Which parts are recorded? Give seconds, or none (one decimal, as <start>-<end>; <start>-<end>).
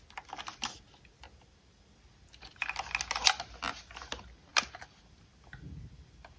0.0-4.5; 5.0-6.4